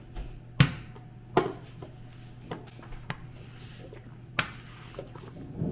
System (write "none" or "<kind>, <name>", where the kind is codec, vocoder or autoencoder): none